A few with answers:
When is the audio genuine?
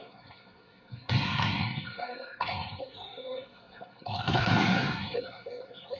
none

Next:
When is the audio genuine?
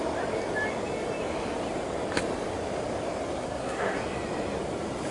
0.0-3.4; 4.0-5.1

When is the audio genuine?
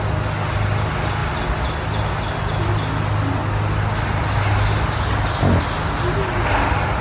0.0-7.0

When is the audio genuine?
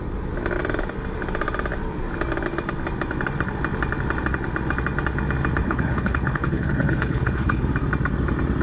0.0-5.6; 7.6-8.6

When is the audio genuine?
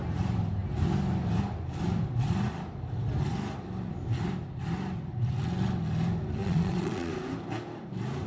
0.0-6.4; 7.1-8.3